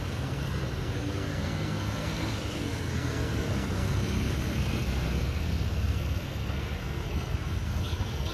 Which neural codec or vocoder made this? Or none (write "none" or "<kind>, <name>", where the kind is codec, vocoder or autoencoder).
codec, SNAC